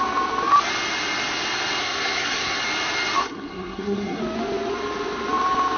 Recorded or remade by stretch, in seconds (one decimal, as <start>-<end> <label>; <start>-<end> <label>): 0.0-1.8 recorded; 1.8-2.6 remade; 2.6-3.2 recorded; 3.2-4.2 remade; 4.2-5.8 recorded